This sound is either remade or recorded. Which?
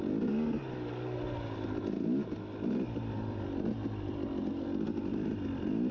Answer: recorded